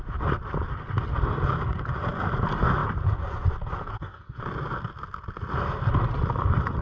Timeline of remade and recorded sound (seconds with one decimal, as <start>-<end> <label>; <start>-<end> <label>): 0.0-3.9 recorded; 3.9-4.4 remade; 4.4-6.8 recorded